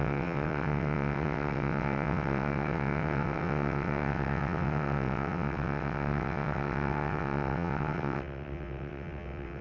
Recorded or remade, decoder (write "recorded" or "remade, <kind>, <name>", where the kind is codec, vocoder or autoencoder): remade, vocoder, WaveNeXt